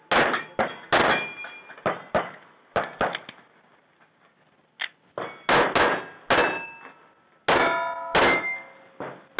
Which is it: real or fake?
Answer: real